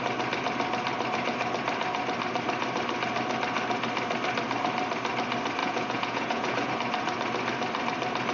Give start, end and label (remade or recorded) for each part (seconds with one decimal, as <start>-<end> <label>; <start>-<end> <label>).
0.0-5.6 recorded; 5.6-6.7 remade; 6.7-8.3 recorded